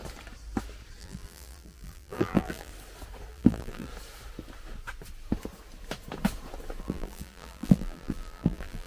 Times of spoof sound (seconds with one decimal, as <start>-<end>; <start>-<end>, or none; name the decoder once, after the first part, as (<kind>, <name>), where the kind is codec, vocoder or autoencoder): 1.0-2.7 (vocoder, BigVGAN v2); 3.3-3.9; 6.8-8.9